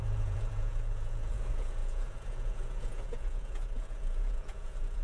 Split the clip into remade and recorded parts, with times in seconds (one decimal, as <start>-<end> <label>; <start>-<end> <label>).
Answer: 0.0-5.0 remade